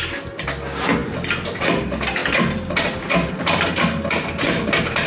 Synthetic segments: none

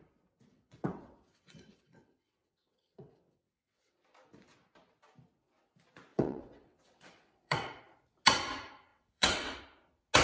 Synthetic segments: 0.5-4.0 (vocoder, WaveNeXt); 6.1-7.8; 8.9-9.6

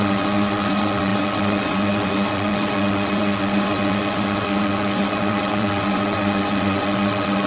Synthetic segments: 0.0-7.5 (vocoder, WaveNeXt)

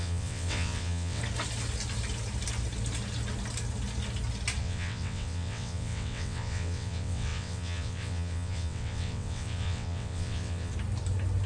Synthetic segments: 0.0-1.2 (vocoder, WaveNeXt); 4.6-10.7

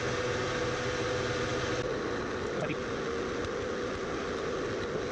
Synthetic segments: none

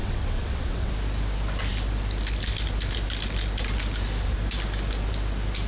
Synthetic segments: 0.0-0.9 (vocoder, WaveNeXt)

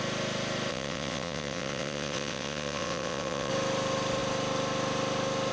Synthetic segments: 0.7-3.5 (vocoder, WaveNeXt)

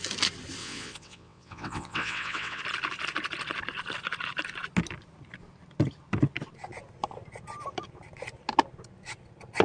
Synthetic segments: 0.6-2.6 (vocoder, WaveNeXt)